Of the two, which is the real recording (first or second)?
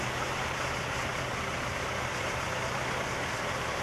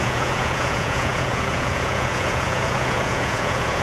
first